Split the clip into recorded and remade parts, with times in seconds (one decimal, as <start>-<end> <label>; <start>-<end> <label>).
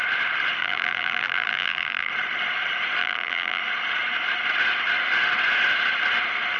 0.0-0.6 recorded; 0.6-2.1 remade; 2.1-3.0 recorded; 3.0-3.6 remade; 3.6-6.6 recorded